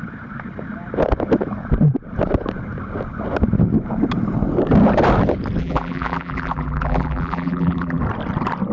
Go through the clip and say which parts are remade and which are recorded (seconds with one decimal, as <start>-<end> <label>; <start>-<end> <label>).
0.0-5.6 recorded; 5.6-8.0 remade; 8.0-8.7 recorded